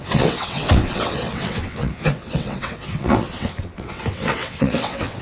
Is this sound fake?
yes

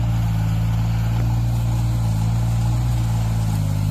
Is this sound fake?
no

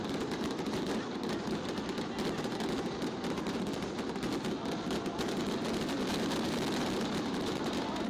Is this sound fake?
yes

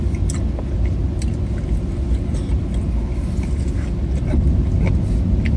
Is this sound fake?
no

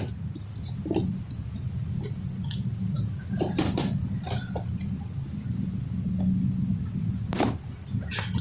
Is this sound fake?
no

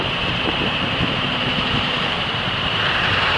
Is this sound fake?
yes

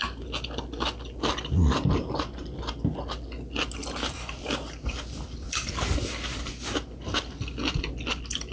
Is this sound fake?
no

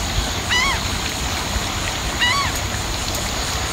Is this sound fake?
yes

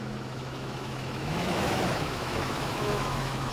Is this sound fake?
yes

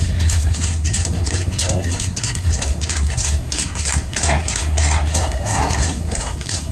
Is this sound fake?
yes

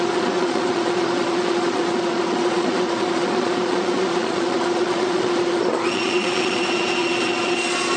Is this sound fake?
yes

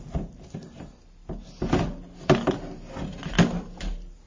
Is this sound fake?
no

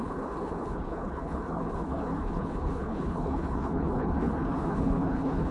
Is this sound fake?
yes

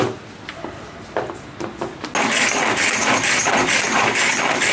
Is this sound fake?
no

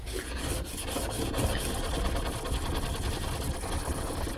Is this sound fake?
no